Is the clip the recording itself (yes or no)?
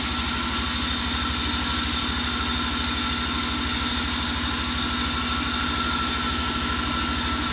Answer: yes